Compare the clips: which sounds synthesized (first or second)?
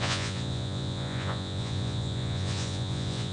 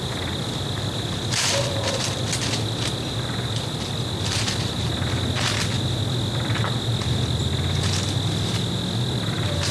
first